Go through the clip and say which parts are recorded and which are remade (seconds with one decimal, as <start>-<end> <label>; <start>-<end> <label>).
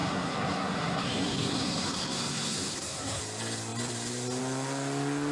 0.0-3.2 remade; 3.2-5.3 recorded